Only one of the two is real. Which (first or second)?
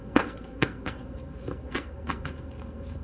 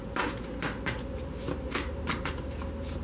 second